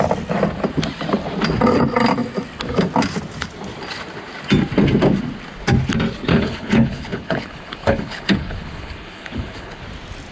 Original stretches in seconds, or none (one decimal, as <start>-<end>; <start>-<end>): 0.0-6.3; 9.8-10.3